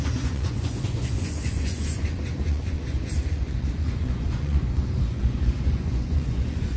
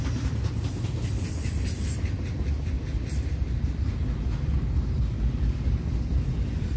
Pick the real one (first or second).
second